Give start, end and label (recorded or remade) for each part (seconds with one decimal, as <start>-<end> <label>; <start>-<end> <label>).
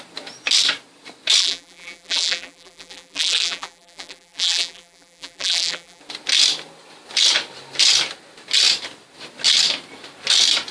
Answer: 0.0-1.4 recorded; 1.4-6.0 remade; 6.0-10.7 recorded